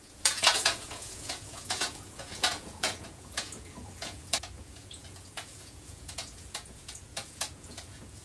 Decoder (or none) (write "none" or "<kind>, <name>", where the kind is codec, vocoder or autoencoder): vocoder, Vocos